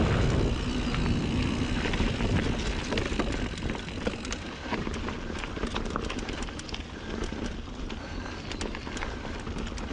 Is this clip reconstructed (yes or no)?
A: no